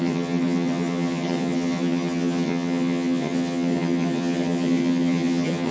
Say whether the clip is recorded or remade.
remade